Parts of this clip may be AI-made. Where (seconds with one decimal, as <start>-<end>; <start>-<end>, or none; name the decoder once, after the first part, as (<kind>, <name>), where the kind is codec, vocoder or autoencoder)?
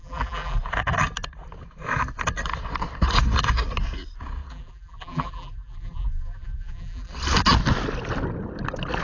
0.0-0.6 (vocoder, BigVGAN v2); 4.5-7.1